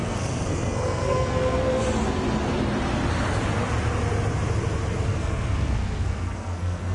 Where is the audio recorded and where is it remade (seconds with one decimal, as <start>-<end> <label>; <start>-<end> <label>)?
0.0-1.8 remade; 1.8-5.1 recorded; 5.1-6.9 remade